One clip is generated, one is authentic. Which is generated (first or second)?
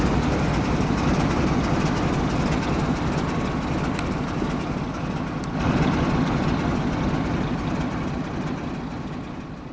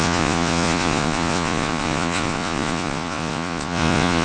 second